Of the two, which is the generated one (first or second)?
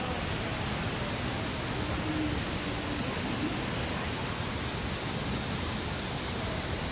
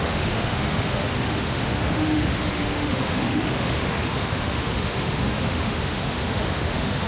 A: second